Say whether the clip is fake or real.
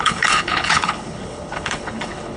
fake